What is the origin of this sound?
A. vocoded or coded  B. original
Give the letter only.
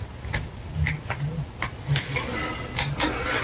B